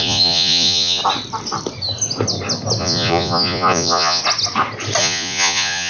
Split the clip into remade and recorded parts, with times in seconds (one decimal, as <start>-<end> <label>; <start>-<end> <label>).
0.0-1.0 remade; 1.0-2.8 recorded; 2.8-4.2 remade; 4.2-5.0 recorded; 5.0-5.9 remade